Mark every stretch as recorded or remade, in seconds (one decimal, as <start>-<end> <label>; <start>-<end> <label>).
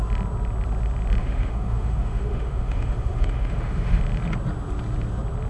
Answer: 0.0-1.2 recorded; 1.2-4.0 remade; 4.0-5.5 recorded